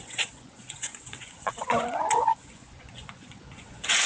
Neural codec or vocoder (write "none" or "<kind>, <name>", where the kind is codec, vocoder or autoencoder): vocoder, Vocos